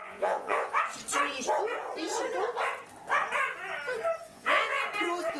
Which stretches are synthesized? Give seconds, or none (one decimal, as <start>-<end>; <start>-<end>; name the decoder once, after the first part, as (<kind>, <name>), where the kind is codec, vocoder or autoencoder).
0.0-0.7 (vocoder, Vocos); 4.2-4.8